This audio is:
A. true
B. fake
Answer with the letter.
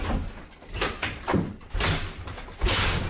A